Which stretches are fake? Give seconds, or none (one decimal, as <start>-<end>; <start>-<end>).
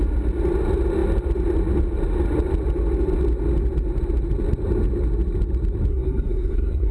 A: 5.9-6.9